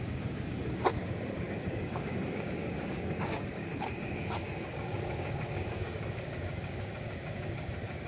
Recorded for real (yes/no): no